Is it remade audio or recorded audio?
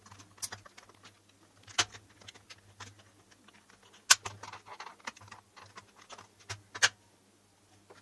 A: recorded